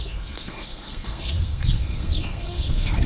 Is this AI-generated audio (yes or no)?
yes